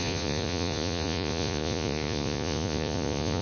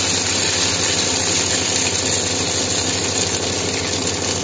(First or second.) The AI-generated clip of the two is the first